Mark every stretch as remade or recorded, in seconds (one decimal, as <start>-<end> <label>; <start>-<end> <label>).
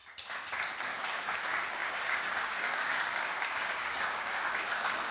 0.0-0.8 recorded; 0.8-5.1 remade